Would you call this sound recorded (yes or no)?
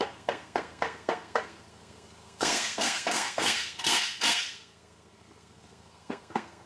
no